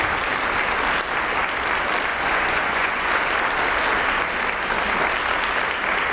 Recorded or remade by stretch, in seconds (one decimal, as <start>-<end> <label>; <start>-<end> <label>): 0.0-2.1 recorded; 2.1-3.1 remade; 3.1-6.1 recorded